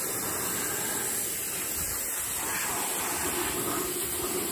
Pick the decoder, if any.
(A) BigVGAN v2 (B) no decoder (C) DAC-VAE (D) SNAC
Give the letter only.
B